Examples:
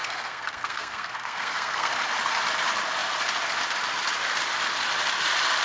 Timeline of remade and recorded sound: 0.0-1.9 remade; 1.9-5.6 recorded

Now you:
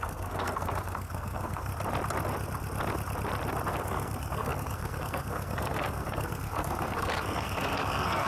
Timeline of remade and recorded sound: 0.0-1.7 remade; 1.7-3.7 recorded; 3.7-8.3 remade

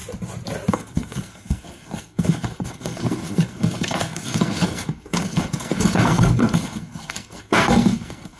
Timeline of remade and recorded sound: 0.0-0.7 recorded; 0.7-8.4 remade

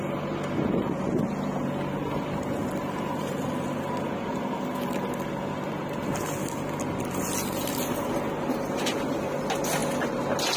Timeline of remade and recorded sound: 0.0-10.6 recorded